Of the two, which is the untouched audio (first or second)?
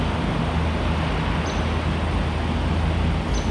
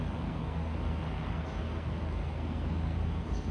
first